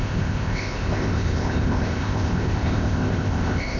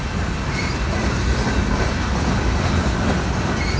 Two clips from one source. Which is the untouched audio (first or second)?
second